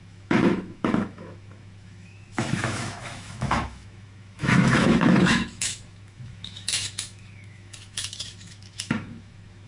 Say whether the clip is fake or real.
fake